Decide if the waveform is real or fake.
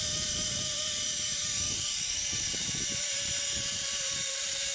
fake